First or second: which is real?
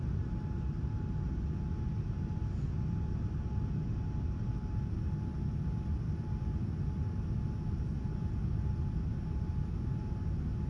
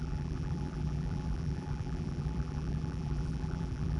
first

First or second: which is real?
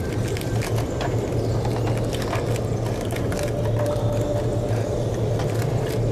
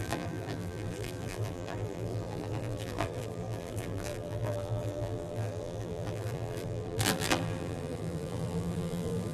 first